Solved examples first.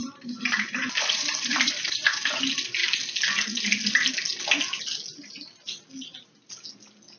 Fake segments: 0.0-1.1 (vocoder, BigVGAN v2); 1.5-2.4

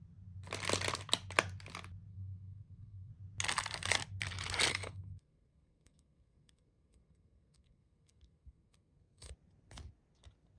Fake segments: 2.1-3.1 (codec, SNAC); 4.7-9.3

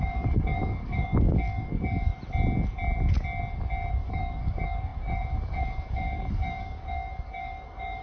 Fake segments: 0.0-2.1 (codec, DAC); 3.9-8.0

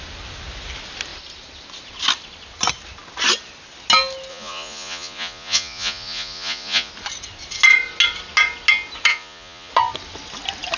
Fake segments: 4.3-6.9 (vocoder, Vocos); 9.1-9.7

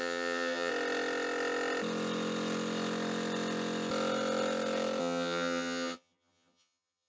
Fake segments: 0.0-0.7 (vocoder, HiFi-GAN); 5.0-7.1

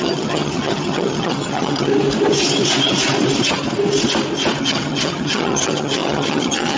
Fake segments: 0.0-1.9 (vocoder, HiFi-GAN); 4.6-6.8

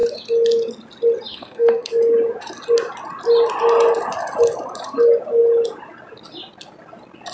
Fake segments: 1.3-1.9 (codec, SNAC)